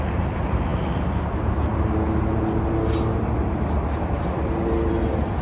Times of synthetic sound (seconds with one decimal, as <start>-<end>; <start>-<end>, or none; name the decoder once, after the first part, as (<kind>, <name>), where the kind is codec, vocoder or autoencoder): none